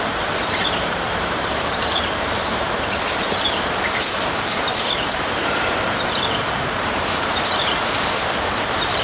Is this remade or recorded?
remade